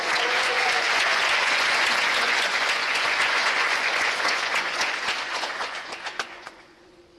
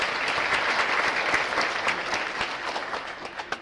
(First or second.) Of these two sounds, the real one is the second